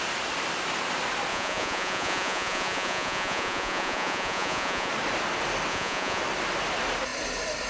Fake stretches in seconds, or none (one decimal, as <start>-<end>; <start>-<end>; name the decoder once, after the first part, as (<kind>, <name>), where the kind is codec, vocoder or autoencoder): 1.3-4.9 (vocoder, Vocos); 5.7-6.2